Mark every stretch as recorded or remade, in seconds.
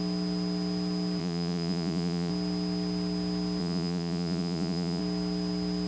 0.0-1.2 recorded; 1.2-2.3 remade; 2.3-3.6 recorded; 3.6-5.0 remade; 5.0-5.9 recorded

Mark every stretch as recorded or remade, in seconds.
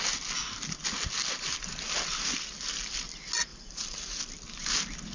0.0-3.5 recorded; 3.5-4.2 remade; 4.2-5.1 recorded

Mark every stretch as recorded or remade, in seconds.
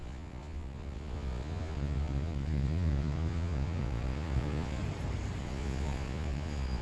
0.0-4.8 remade; 4.8-5.4 recorded; 5.4-6.8 remade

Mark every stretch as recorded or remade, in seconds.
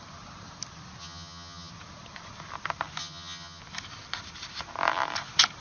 0.0-1.0 recorded; 1.0-1.7 remade; 1.7-3.0 recorded; 3.0-3.6 remade; 3.6-5.6 recorded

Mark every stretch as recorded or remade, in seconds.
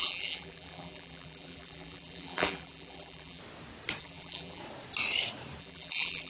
0.0-3.4 remade; 3.4-4.0 recorded; 4.0-4.6 remade; 4.6-5.6 recorded; 5.6-6.3 remade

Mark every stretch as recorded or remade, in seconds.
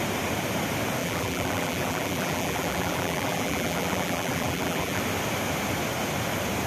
0.0-1.0 recorded; 1.0-5.0 remade; 5.0-6.7 recorded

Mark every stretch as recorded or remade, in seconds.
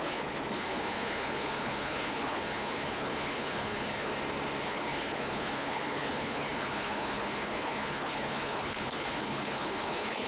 0.0-4.1 remade; 4.1-4.6 recorded; 4.6-10.3 remade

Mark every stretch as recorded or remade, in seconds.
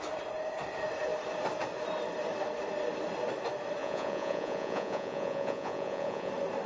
0.0-3.8 recorded; 3.8-6.3 remade; 6.3-6.7 recorded